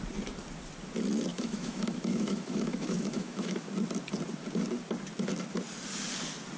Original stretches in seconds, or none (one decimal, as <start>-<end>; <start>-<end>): 0.0-1.3; 3.6-6.6